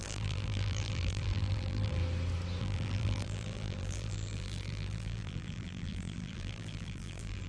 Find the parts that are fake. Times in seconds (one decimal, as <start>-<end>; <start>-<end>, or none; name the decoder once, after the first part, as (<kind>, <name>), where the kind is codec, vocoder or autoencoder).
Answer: 0.0-2.0 (vocoder, BigVGAN v2); 2.6-7.5